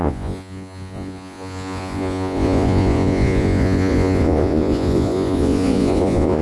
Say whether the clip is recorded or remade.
remade